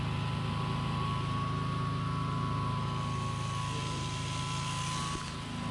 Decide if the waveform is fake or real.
real